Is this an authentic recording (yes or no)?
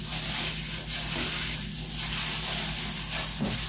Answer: yes